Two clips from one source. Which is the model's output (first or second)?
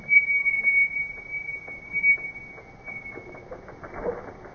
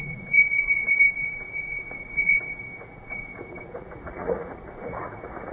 second